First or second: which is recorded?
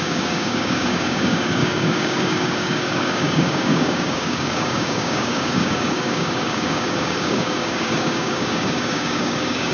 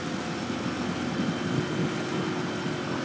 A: second